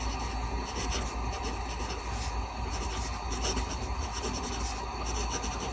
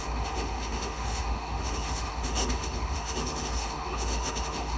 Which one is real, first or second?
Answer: first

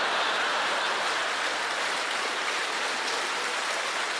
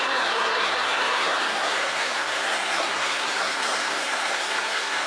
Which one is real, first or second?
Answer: first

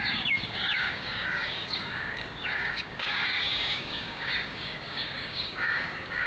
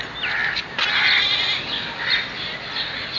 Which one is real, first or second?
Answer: second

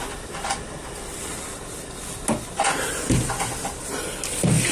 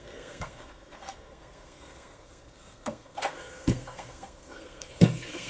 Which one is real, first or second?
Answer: first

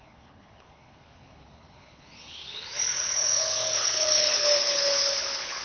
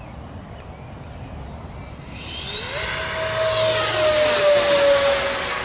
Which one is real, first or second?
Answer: second